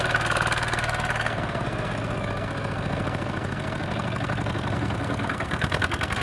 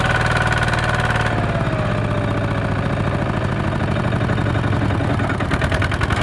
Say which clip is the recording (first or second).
second